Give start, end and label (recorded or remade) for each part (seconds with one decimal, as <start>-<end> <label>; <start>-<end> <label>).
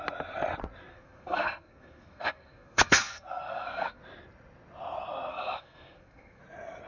0.0-0.9 recorded; 0.9-4.0 remade; 4.0-5.3 recorded; 5.3-6.4 remade; 6.4-6.9 recorded